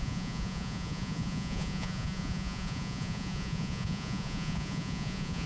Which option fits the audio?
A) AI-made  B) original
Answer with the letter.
A